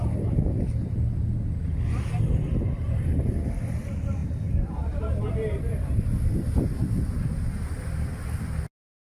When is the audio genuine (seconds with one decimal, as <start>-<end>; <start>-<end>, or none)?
0.0-4.2; 6.4-9.1